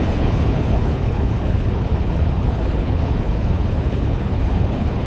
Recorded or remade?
remade